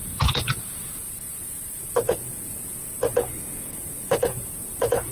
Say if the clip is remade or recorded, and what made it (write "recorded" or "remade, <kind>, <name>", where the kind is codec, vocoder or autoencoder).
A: remade, vocoder, Vocos